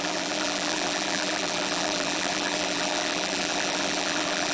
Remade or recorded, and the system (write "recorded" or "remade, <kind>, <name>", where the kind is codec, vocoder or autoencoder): remade, vocoder, BigVGAN v2